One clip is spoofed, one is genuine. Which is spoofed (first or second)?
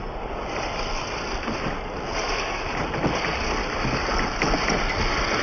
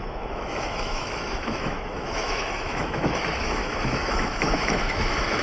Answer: second